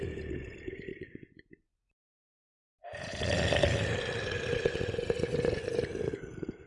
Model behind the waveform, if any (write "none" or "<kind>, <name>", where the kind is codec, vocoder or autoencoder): none